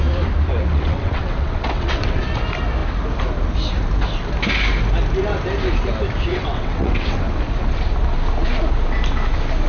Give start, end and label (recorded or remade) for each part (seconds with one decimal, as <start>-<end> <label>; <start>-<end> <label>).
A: 0.0-0.7 recorded; 0.7-2.2 remade; 2.2-6.3 recorded; 6.3-7.2 remade; 7.2-9.7 recorded